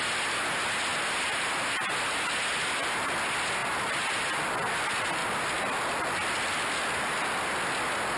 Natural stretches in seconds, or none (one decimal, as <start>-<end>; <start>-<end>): 0.0-8.2